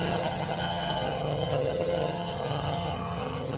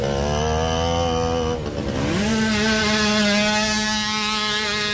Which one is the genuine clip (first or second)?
second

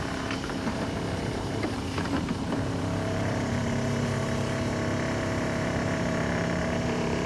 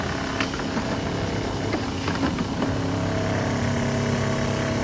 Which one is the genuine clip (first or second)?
second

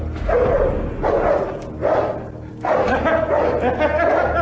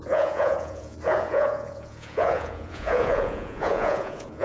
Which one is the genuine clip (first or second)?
first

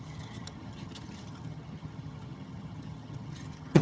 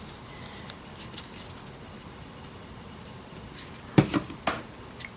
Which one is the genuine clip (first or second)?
second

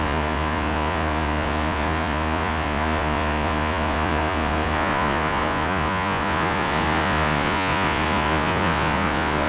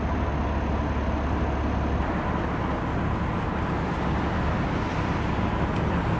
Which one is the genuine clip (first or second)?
second